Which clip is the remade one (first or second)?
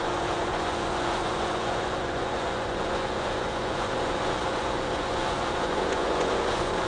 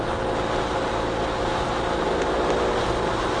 first